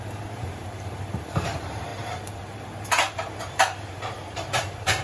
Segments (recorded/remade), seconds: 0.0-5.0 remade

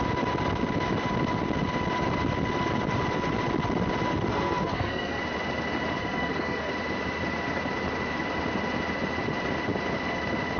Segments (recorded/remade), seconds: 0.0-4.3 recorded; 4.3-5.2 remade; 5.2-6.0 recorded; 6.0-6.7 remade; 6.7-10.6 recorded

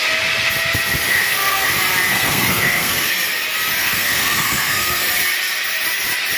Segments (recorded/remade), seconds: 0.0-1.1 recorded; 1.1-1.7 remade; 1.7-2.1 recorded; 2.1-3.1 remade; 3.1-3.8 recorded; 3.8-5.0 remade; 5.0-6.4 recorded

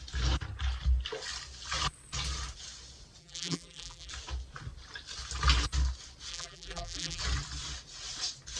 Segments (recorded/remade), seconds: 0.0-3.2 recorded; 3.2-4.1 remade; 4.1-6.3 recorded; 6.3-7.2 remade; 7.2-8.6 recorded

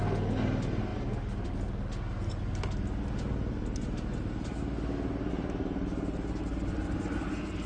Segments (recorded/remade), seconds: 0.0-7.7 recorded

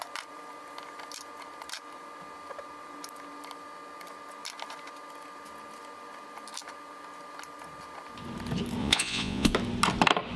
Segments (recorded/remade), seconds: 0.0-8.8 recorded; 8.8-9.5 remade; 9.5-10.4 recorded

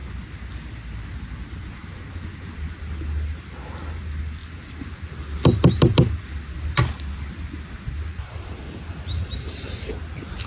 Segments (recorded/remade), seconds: 0.0-4.4 recorded; 4.4-5.2 remade; 5.2-8.1 recorded; 8.1-9.9 remade; 9.9-10.5 recorded